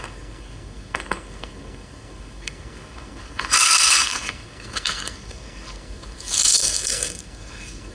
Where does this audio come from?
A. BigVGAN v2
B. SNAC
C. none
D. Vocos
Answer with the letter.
B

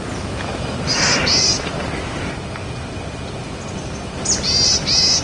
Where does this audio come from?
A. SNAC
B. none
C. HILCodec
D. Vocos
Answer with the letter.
B